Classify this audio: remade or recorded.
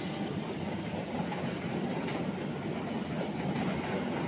recorded